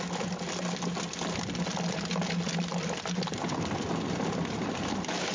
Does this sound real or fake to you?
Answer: real